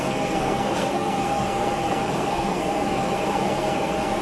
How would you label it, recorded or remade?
remade